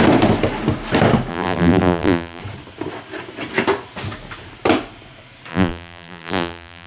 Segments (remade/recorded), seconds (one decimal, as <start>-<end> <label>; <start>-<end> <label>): 0.0-1.3 recorded; 1.3-2.4 remade; 2.4-5.5 recorded; 5.5-6.9 remade